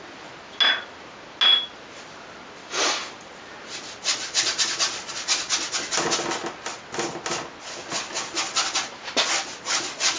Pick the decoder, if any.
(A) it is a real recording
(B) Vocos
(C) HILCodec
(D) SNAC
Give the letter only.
A